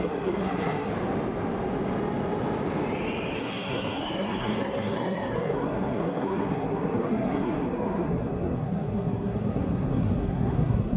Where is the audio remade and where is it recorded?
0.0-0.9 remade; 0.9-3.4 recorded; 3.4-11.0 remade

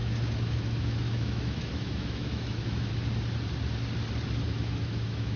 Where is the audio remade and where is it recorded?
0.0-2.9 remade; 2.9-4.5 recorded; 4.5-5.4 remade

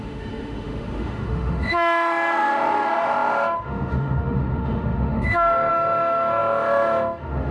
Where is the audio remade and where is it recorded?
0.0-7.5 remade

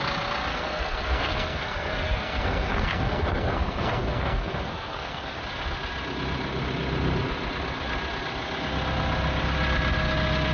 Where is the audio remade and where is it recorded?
0.0-0.5 recorded; 0.5-5.4 remade; 5.4-10.5 recorded

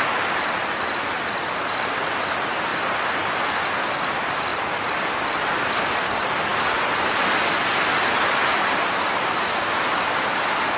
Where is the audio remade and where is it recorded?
0.0-10.8 recorded